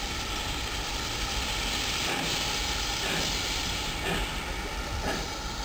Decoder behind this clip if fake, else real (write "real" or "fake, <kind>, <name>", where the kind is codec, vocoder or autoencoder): real